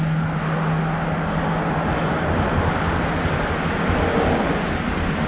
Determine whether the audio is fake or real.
real